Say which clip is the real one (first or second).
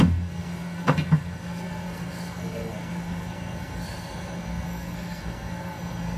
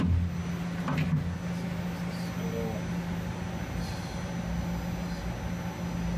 second